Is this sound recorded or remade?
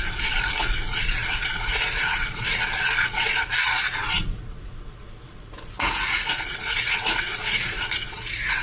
remade